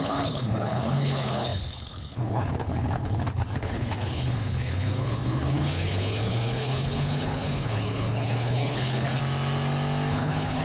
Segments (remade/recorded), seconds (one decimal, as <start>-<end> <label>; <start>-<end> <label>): 0.0-9.2 remade; 9.2-10.1 recorded; 10.1-10.6 remade